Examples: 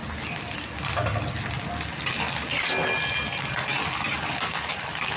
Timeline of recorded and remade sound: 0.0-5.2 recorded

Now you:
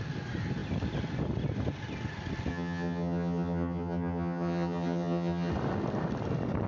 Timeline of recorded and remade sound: 0.0-2.5 recorded; 2.5-5.5 remade; 5.5-6.7 recorded